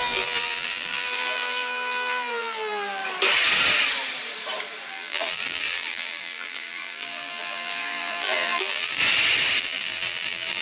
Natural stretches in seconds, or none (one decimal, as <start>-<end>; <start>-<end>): 3.0-4.9; 9.0-9.6

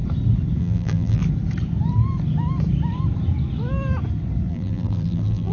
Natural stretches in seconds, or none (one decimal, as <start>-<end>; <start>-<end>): 0.0-0.6; 1.2-4.5